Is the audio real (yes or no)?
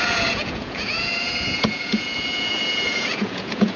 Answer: no